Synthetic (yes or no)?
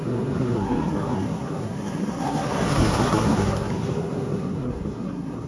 yes